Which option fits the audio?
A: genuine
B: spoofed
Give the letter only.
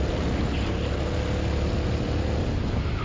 A